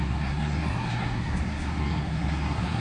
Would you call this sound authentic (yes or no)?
no